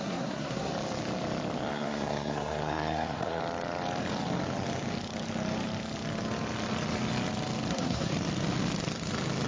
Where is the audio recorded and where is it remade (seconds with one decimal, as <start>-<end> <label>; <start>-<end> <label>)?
0.0-0.7 remade; 0.7-1.7 recorded; 1.7-3.4 remade; 3.4-7.7 recorded; 7.7-8.1 remade; 8.1-9.5 recorded